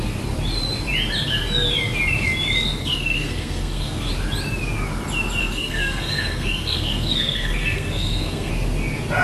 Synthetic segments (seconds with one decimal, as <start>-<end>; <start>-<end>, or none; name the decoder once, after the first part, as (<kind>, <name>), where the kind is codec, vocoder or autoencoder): 2.8-4.1 (codec, SNAC); 5.4-8.5